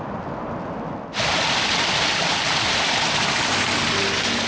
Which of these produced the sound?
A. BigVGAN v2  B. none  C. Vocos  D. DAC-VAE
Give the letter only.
B